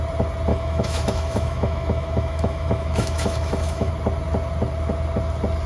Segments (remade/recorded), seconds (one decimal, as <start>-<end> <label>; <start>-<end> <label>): 0.0-0.5 recorded; 0.5-3.9 remade; 3.9-5.7 recorded